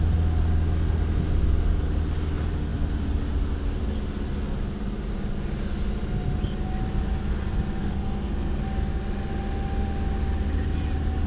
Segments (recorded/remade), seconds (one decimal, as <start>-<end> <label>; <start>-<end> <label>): 0.0-7.8 recorded; 7.8-8.6 remade; 8.6-11.3 recorded